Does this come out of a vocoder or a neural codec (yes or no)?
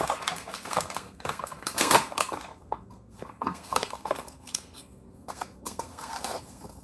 yes